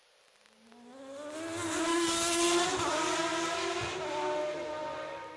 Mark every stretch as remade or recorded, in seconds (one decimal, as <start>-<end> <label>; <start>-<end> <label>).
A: 0.0-1.9 recorded; 1.9-2.4 remade; 2.4-5.4 recorded